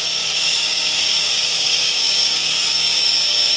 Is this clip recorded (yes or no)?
no